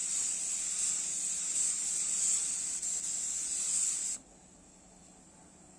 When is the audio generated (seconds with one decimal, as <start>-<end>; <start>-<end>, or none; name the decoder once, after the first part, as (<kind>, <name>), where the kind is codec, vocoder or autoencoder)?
none